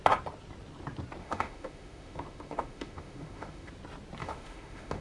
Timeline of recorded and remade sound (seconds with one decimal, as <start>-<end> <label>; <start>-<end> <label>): 0.0-1.2 recorded; 1.2-3.7 remade; 3.7-4.2 recorded; 4.2-5.0 remade